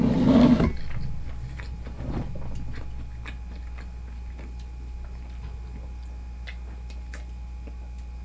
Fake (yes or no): no